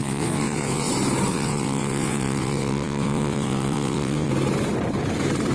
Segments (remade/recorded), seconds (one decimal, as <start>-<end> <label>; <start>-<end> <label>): 0.0-0.9 remade; 0.9-1.3 recorded; 1.3-4.3 remade; 4.3-5.5 recorded